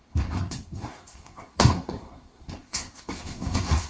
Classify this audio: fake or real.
fake